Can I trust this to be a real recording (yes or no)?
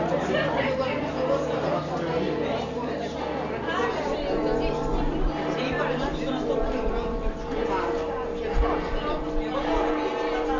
yes